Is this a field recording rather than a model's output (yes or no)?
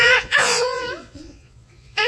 no